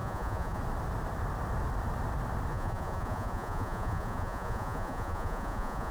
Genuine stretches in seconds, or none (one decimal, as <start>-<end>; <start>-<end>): 0.6-2.5